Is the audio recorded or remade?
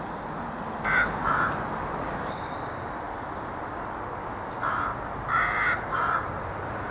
recorded